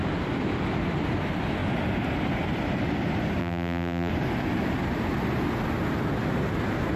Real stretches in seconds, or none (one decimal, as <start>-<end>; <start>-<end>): 0.0-3.4; 4.1-7.0